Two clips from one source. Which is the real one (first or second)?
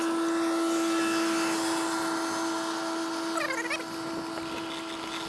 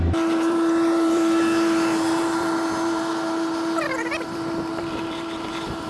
first